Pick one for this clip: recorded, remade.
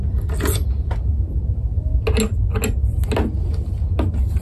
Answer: recorded